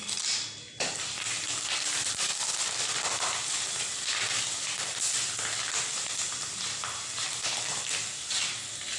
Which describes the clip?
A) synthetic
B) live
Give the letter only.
B